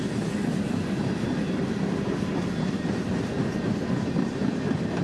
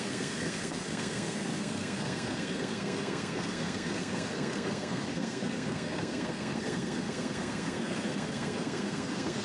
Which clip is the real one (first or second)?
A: first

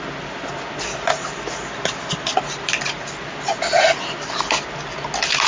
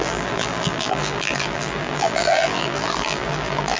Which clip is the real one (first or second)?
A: first